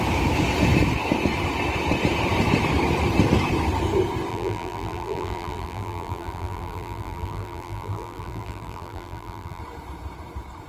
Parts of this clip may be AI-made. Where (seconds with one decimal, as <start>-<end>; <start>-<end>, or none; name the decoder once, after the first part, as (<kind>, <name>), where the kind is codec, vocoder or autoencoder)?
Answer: 4.3-9.6 (vocoder, BigVGAN v2)